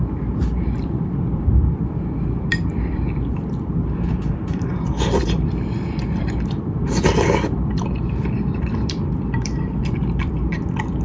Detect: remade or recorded remade